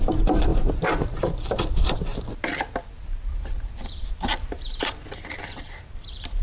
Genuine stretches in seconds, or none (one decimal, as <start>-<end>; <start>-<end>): 2.1-4.1